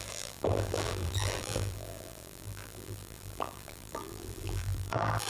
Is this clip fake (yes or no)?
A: yes